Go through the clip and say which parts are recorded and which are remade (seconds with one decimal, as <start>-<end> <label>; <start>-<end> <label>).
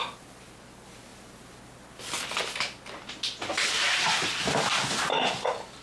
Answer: 0.0-5.8 recorded